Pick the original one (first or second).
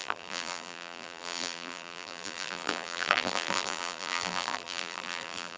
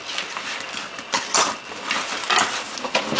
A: second